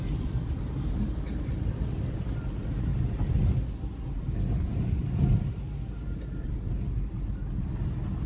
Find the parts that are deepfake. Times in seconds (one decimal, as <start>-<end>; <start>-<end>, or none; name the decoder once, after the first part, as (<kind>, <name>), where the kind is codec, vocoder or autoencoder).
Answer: none